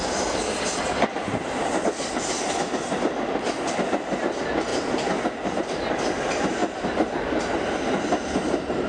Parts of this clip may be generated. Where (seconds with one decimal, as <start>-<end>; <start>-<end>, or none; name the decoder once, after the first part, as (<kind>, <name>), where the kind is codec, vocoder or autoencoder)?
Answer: none